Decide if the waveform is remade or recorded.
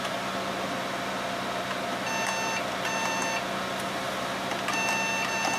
recorded